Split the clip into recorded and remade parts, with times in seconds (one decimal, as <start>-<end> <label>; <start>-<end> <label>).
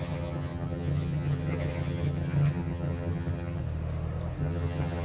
0.0-3.6 remade; 3.6-4.4 recorded; 4.4-5.0 remade